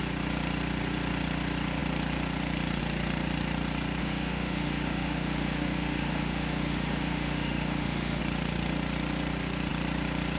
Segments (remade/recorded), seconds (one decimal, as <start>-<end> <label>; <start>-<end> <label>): 0.0-4.0 recorded; 4.0-8.2 remade; 8.2-10.4 recorded